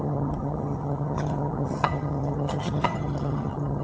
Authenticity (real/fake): fake